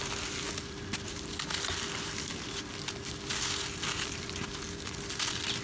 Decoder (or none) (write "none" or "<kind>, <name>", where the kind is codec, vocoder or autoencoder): none